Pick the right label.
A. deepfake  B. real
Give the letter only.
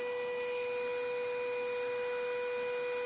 B